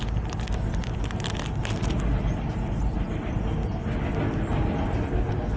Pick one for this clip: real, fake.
real